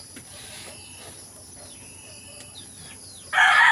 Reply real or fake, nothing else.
real